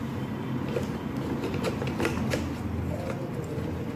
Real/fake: real